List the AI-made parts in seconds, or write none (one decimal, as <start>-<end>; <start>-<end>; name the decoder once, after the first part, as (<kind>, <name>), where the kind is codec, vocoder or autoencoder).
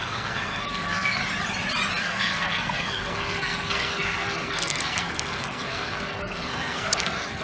0.0-1.2 (codec, SNAC); 2.0-7.4